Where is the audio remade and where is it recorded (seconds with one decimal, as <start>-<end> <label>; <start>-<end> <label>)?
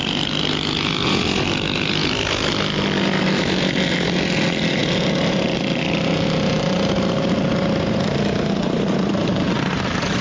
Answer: 0.0-10.2 recorded